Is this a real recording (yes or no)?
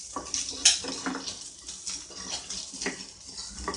yes